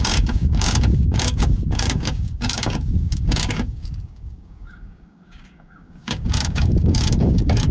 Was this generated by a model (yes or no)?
yes